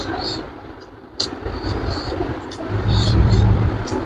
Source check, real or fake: fake